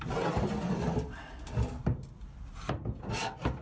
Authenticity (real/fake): real